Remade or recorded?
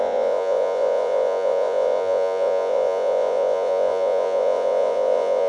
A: remade